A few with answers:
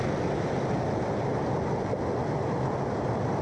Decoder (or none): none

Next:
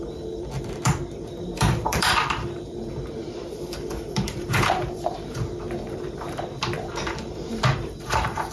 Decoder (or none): vocoder, BigVGAN v2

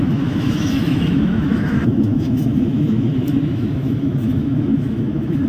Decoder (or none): autoencoder, DAC-VAE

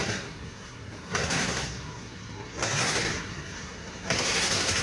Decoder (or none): codec, SNAC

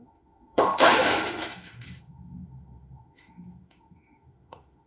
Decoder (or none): autoencoder, DAC-VAE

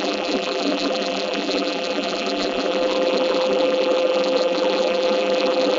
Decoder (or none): vocoder, BigVGAN v2